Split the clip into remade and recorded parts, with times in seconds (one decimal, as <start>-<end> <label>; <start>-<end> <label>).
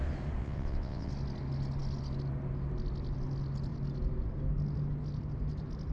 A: 0.0-0.4 recorded; 0.4-1.1 remade; 1.1-5.9 recorded